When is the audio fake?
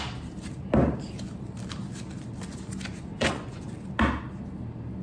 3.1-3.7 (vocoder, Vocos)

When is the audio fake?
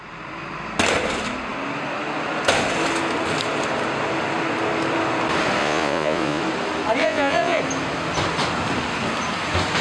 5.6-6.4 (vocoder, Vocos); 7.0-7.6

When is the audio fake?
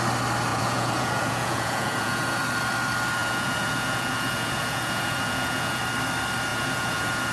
0.5-2.4 (vocoder, Vocos); 3.2-5.8; 6.5-7.3